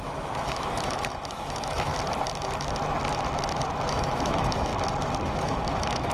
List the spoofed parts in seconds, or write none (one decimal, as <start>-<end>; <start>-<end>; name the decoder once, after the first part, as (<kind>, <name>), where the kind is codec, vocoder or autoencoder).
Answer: 0.0-1.9 (autoencoder, DAC-VAE); 3.9-4.7; 5.2-6.1